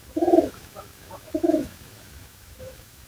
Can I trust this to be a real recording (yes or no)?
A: no